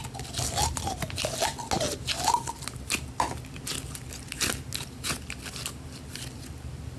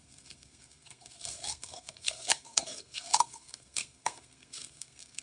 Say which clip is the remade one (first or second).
second